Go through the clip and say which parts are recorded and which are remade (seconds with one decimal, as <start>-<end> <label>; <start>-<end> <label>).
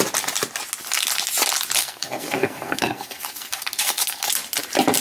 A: 0.0-1.8 recorded; 1.8-4.3 remade; 4.3-5.0 recorded